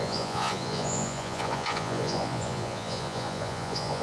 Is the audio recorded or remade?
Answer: remade